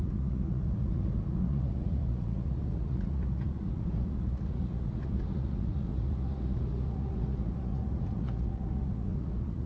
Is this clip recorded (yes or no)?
no